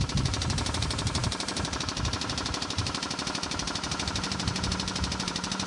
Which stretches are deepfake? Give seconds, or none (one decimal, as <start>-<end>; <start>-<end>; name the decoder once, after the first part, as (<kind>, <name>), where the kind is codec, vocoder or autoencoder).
0.0-5.7 (vocoder, BigVGAN v2)